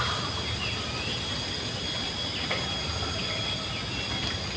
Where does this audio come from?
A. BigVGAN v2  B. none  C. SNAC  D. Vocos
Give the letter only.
B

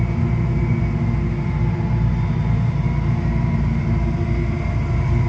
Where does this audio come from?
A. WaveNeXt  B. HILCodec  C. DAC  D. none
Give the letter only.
D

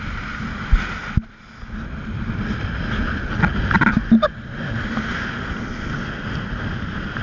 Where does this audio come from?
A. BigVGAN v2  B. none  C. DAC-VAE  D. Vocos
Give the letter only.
B